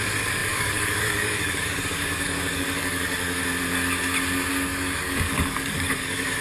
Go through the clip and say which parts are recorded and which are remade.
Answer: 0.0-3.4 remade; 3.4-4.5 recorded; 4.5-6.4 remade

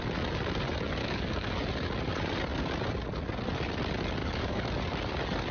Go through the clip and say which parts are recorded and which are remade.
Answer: 0.0-1.0 recorded; 1.0-1.5 remade; 1.5-4.2 recorded; 4.2-4.7 remade; 4.7-5.5 recorded

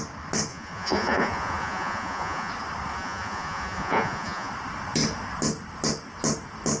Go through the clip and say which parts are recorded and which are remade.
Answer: 0.0-0.5 recorded; 0.5-2.5 remade; 2.5-2.9 recorded; 2.9-4.5 remade; 4.5-6.8 recorded

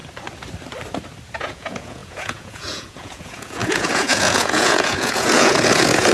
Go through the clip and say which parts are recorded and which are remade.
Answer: 0.0-1.4 recorded; 1.4-6.1 remade

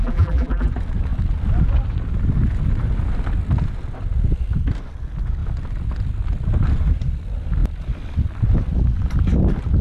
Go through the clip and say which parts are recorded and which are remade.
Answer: 0.0-0.7 remade; 0.7-9.8 recorded

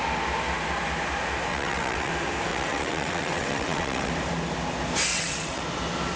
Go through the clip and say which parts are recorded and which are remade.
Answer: 0.0-1.5 recorded; 1.5-2.1 remade; 2.1-2.5 recorded; 2.5-4.1 remade; 4.1-5.1 recorded; 5.1-5.6 remade; 5.6-6.2 recorded

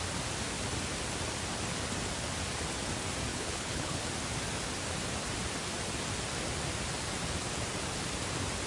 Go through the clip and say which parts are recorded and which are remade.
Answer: 0.0-3.3 recorded; 3.3-4.0 remade; 4.0-8.7 recorded